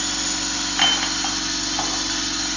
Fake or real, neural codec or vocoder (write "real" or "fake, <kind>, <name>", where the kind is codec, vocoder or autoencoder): real